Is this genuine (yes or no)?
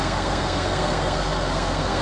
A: no